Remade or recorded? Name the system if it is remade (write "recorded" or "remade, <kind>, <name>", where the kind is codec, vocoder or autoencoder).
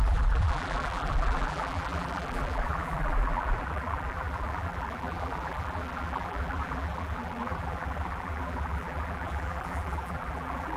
remade, vocoder, BigVGAN v2